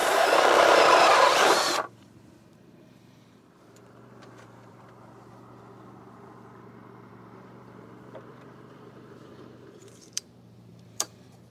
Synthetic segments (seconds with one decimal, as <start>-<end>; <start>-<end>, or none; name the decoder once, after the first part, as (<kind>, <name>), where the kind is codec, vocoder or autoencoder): 0.0-11.5 (vocoder, BigVGAN v2)

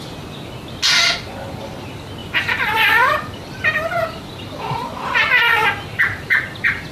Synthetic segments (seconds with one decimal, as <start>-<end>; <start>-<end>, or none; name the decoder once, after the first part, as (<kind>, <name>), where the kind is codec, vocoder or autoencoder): 2.2-6.3 (vocoder, BigVGAN v2)

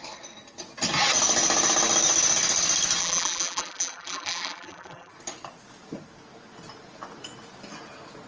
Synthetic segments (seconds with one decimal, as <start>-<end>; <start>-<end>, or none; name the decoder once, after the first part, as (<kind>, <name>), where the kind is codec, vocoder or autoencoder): 3.0-5.1 (vocoder, BigVGAN v2)

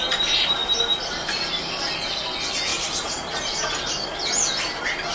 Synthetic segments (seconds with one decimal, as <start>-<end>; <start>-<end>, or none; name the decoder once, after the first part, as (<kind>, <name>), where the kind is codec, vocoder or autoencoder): 2.7-3.8 (vocoder, BigVGAN v2)